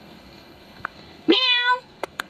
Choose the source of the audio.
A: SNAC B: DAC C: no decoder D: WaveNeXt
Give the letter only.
A